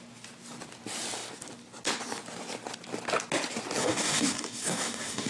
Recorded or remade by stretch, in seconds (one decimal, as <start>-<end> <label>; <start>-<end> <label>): 0.0-3.8 recorded; 3.8-5.3 remade